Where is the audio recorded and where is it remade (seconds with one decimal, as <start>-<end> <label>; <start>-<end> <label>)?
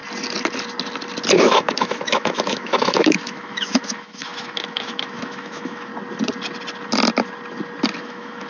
0.0-1.3 recorded; 1.3-5.9 remade; 5.9-8.0 recorded; 8.0-8.5 remade